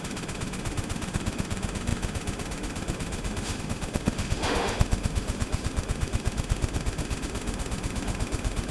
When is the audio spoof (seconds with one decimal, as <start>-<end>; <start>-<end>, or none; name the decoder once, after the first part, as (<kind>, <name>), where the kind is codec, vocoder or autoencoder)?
0.0-8.7 (autoencoder, DAC-VAE)